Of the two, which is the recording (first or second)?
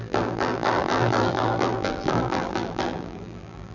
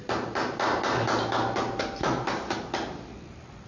second